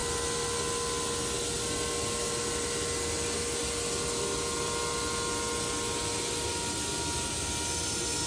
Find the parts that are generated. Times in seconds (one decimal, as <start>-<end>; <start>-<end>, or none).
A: none